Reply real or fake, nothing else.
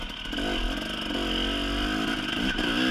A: real